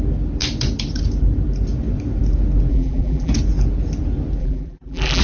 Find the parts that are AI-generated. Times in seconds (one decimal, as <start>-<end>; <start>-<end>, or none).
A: 2.7-3.3; 4.4-5.2